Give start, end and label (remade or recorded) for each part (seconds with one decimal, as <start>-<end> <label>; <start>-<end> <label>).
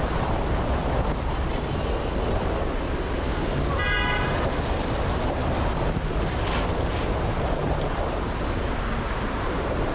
0.0-0.8 remade; 0.8-4.7 recorded; 4.7-5.4 remade; 5.4-7.2 recorded; 7.2-9.9 remade